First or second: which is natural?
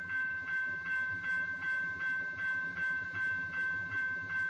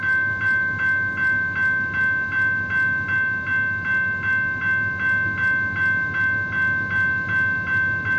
second